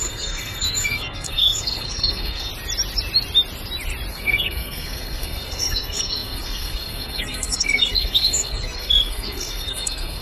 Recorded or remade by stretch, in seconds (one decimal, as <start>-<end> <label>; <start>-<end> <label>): 0.0-2.5 remade; 2.5-4.1 recorded; 4.1-10.2 remade